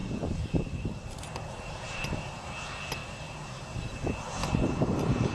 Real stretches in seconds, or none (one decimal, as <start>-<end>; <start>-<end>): 2.4-4.4